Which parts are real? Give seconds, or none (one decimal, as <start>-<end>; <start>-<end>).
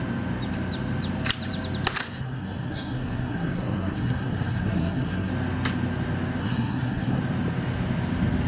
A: 0.0-2.0; 5.3-6.4; 7.2-8.5